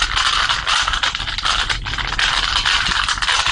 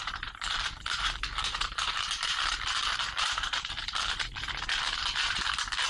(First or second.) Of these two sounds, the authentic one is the first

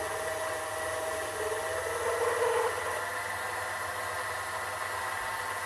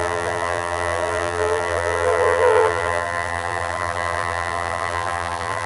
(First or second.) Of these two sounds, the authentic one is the first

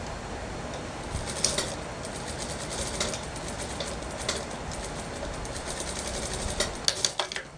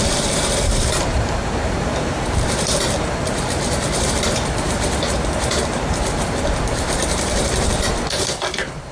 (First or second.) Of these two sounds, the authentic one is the first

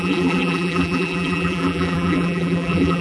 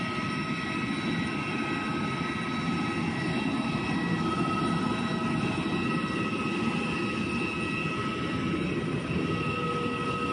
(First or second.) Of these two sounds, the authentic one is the second